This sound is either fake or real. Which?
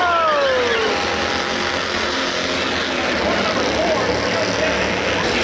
real